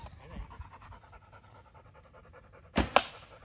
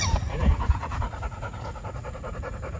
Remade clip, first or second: second